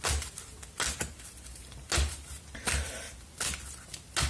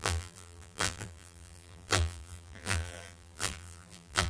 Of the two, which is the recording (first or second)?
first